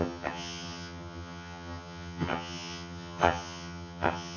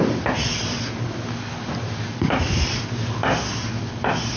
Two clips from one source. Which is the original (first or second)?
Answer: second